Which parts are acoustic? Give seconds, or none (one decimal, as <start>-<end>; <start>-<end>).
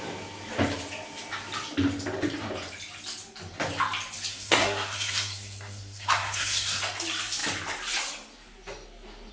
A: 0.0-4.3; 6.8-9.3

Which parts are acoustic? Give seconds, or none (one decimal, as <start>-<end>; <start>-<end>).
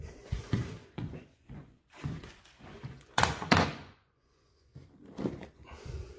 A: 4.7-5.3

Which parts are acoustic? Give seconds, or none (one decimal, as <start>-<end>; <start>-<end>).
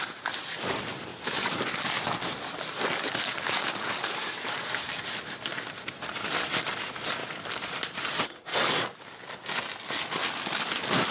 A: 1.1-2.5; 8.5-11.1